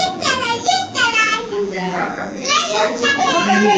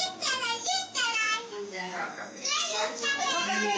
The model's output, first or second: first